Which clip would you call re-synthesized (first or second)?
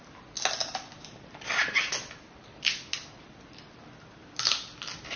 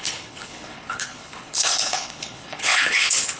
second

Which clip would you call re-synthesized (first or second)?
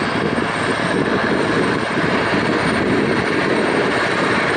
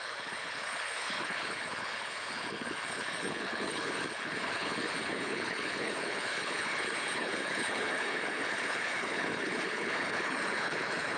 second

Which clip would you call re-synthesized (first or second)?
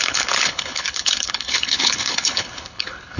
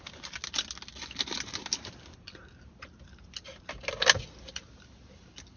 first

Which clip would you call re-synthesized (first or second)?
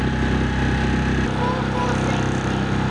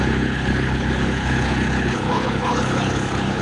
second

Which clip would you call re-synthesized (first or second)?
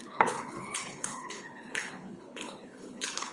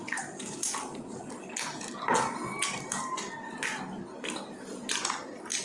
first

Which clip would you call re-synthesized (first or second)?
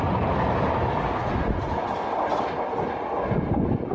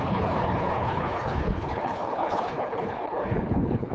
second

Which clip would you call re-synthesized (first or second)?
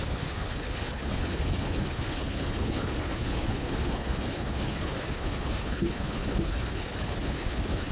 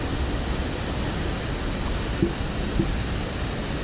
first